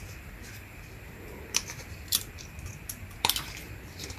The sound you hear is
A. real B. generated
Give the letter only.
B